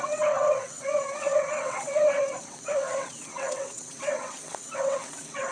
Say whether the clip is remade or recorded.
remade